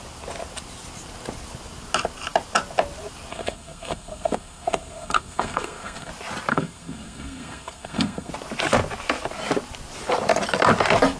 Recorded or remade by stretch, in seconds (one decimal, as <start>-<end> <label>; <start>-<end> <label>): 0.0-3.3 recorded; 3.3-6.1 remade; 6.1-6.5 recorded; 6.5-8.3 remade; 8.3-11.2 recorded